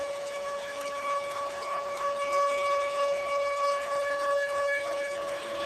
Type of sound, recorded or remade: remade